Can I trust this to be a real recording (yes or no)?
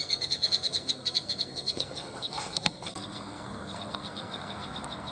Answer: no